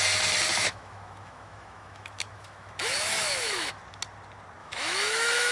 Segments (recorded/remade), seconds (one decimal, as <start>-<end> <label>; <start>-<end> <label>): 0.0-0.5 recorded; 0.5-3.8 remade; 3.8-4.6 recorded; 4.6-5.5 remade